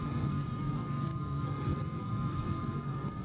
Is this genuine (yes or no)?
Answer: no